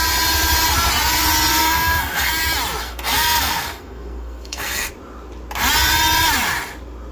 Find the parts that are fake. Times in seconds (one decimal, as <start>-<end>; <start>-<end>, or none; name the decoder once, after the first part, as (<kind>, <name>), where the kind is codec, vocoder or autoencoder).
1.5-2.3 (codec, SNAC); 2.8-4.9